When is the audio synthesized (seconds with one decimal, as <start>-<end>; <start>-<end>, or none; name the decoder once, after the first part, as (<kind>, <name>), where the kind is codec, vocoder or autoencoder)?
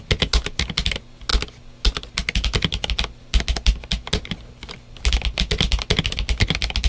none